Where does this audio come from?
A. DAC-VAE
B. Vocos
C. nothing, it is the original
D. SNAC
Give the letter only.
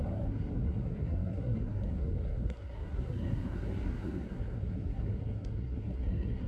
D